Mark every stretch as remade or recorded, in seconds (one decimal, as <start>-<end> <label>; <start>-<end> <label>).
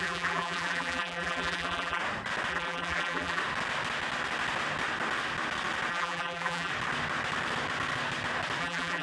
0.0-2.0 remade; 2.0-2.5 recorded; 2.5-3.4 remade; 3.4-5.9 recorded; 5.9-6.7 remade; 6.7-8.6 recorded; 8.6-9.0 remade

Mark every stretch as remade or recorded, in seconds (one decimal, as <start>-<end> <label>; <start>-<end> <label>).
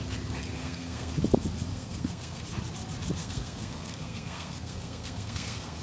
0.0-0.6 recorded; 0.6-1.1 remade; 1.1-1.7 recorded; 1.7-2.4 remade; 2.4-3.2 recorded; 3.2-5.8 remade